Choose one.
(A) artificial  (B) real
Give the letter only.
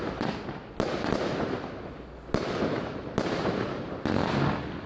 B